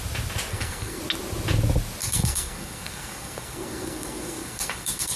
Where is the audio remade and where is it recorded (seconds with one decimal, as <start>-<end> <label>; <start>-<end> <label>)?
0.0-0.5 recorded; 0.5-1.0 remade; 1.0-2.0 recorded; 2.0-5.2 remade